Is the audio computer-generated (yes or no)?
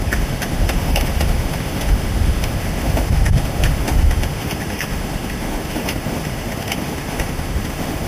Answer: yes